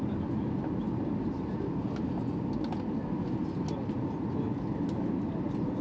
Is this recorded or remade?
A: recorded